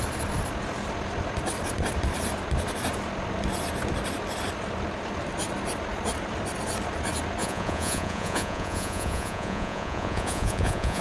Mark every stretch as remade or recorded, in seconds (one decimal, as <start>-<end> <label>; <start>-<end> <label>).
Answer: 0.0-7.4 recorded; 7.4-11.0 remade